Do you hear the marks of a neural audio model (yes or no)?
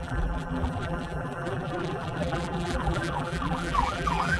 yes